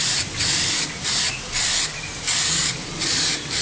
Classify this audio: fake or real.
real